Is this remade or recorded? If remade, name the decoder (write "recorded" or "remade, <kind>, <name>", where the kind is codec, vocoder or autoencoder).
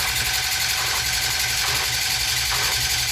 recorded